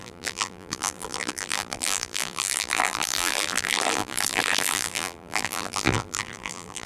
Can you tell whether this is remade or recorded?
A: remade